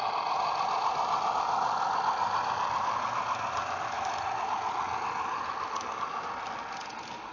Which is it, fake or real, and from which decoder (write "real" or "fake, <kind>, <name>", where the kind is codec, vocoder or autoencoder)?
real